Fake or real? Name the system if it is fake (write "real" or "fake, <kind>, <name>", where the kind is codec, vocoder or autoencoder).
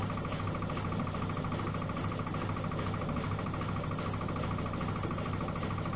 real